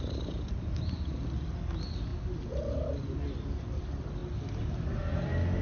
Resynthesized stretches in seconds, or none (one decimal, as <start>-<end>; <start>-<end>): none